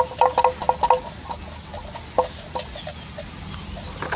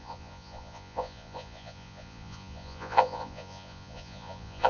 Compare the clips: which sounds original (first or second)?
first